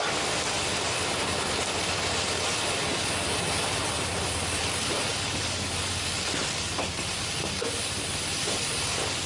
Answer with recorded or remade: remade